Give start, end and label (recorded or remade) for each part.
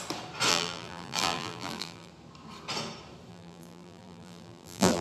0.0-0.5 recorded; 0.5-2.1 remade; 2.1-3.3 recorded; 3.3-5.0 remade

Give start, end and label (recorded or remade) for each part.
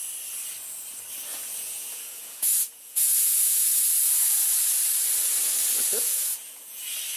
0.0-1.3 recorded; 1.3-3.8 remade; 3.8-5.9 recorded; 5.9-6.8 remade; 6.8-7.2 recorded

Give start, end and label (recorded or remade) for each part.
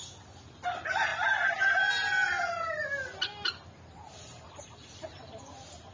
0.0-5.9 recorded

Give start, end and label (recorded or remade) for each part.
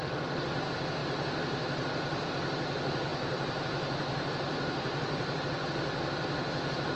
0.0-1.0 recorded; 1.0-2.3 remade; 2.3-3.1 recorded; 3.1-5.4 remade; 5.4-7.0 recorded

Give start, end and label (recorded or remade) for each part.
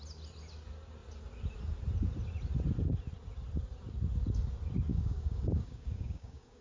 0.0-4.9 recorded; 4.9-6.6 remade